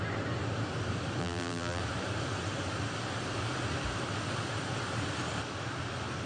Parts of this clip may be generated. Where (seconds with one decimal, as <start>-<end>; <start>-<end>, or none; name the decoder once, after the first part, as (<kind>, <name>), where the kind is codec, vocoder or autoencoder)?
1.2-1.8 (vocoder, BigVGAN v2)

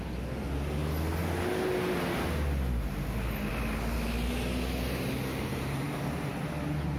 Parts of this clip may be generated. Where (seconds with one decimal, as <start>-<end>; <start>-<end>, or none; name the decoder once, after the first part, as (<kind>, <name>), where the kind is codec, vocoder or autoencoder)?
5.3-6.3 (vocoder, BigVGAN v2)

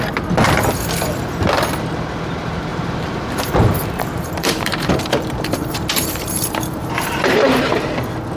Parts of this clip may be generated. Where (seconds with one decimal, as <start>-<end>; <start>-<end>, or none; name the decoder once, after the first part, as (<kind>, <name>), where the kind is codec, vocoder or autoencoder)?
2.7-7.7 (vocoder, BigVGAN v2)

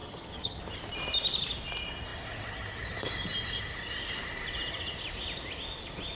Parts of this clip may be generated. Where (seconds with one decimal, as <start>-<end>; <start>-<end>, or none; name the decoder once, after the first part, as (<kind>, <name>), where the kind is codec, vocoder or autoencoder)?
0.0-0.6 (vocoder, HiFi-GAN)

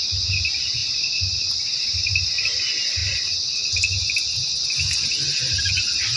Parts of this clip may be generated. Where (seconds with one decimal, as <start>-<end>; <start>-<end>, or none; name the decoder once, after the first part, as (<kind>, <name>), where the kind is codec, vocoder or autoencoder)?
0.8-2.3 (vocoder, BigVGAN v2)

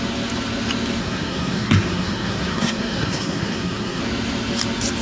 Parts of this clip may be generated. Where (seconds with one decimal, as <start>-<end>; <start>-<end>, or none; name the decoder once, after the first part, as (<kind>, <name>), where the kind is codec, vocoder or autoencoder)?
1.0-4.0 (codec, SNAC)